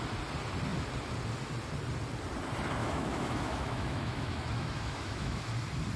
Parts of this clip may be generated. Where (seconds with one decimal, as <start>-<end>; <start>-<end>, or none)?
2.8-5.5